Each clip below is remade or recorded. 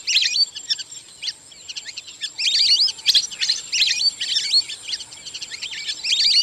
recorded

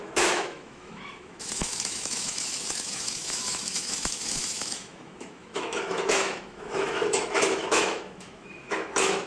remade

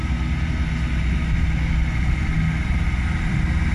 recorded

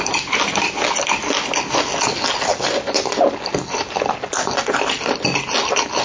recorded